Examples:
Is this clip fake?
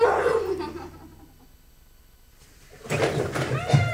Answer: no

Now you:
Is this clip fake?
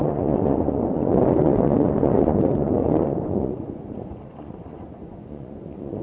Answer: yes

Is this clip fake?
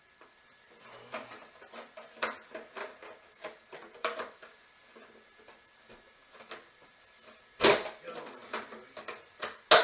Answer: no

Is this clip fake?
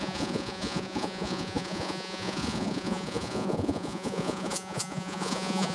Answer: yes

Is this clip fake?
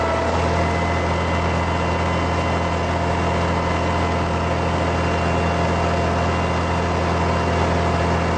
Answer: no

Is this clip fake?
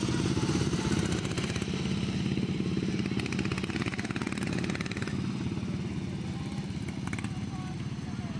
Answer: no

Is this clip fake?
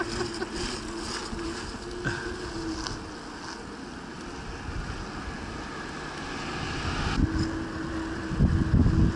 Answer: no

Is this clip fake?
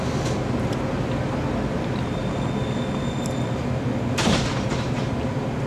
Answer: no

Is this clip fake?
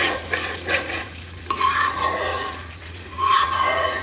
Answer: yes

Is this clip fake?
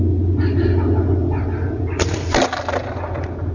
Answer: no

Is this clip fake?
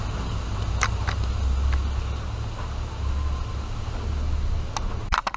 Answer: no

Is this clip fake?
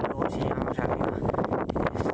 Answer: no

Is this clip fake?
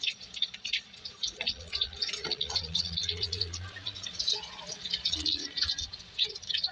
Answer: yes